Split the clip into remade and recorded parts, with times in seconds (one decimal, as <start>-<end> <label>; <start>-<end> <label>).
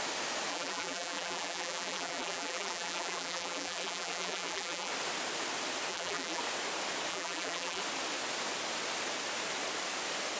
0.0-0.5 recorded; 0.5-4.9 remade; 4.9-5.9 recorded; 5.9-6.4 remade; 6.4-7.1 recorded; 7.1-7.8 remade; 7.8-10.4 recorded